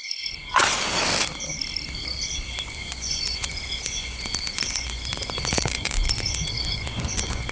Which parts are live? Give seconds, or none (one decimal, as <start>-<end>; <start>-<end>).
0.6-2.5